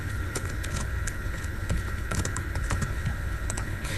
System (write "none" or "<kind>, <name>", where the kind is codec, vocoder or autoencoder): codec, HILCodec